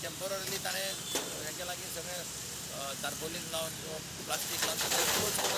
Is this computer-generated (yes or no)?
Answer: yes